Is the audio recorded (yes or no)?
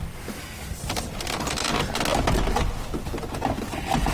yes